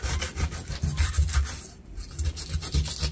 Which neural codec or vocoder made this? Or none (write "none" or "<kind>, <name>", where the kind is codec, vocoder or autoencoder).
none